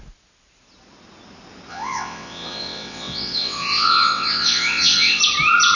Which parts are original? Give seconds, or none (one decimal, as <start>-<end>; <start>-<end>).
0.0-1.7; 5.2-5.8